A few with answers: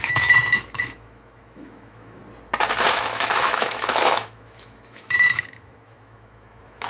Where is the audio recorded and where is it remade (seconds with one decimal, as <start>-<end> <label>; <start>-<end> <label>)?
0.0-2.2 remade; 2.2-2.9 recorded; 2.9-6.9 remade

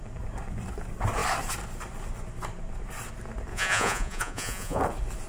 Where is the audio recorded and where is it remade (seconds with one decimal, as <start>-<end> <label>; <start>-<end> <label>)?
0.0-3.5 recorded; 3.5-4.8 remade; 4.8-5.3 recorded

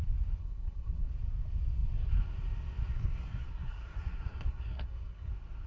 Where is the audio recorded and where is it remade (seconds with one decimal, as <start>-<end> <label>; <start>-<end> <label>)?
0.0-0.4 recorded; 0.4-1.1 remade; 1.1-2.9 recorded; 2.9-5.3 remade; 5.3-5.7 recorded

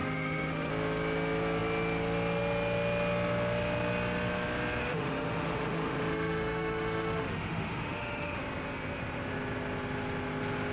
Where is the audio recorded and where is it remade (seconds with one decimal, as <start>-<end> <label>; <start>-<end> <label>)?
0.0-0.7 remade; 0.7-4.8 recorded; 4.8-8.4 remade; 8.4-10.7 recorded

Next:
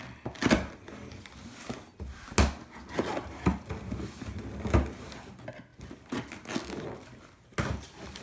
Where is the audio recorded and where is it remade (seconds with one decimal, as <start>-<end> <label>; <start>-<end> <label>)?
0.0-8.2 recorded

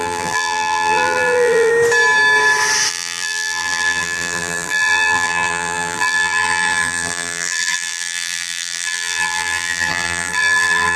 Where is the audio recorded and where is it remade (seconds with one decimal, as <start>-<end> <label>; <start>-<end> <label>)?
0.0-1.7 remade; 1.7-2.9 recorded; 2.9-11.0 remade

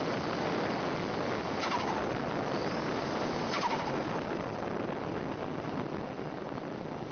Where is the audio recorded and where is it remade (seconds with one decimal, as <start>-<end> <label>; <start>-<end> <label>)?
0.0-2.6 recorded; 2.6-4.1 remade; 4.1-7.1 recorded

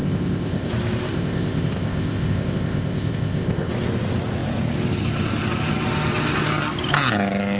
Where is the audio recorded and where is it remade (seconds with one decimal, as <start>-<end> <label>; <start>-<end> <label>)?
0.0-0.7 remade; 0.7-1.1 recorded; 1.1-3.7 remade; 3.7-7.6 recorded